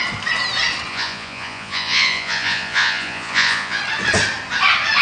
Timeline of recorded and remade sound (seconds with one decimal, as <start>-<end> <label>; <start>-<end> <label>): 0.0-0.9 recorded; 0.9-3.8 remade; 3.8-5.0 recorded